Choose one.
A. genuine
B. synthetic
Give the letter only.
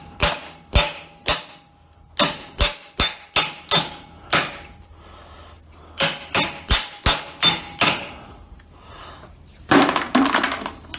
A